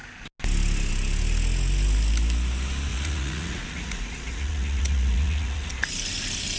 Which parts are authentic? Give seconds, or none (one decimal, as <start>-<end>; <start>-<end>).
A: 0.0-2.9; 5.7-6.6